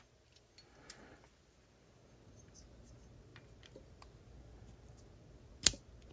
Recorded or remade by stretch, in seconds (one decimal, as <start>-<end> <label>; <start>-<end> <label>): 0.0-6.1 recorded